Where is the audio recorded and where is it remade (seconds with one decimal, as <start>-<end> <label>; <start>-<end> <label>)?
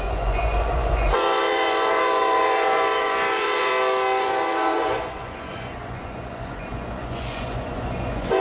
0.0-3.7 remade; 3.7-4.2 recorded; 4.2-8.4 remade